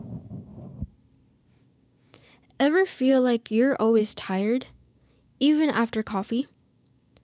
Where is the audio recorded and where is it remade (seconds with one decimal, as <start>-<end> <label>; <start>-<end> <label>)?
0.0-0.5 remade; 0.5-1.6 recorded; 1.6-5.3 remade; 5.3-6.4 recorded; 6.4-7.2 remade